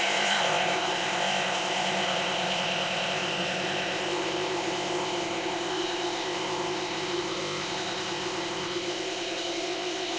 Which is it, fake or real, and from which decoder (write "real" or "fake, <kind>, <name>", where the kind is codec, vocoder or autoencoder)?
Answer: fake, codec, ZipCodec